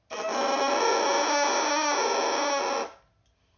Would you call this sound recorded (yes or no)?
yes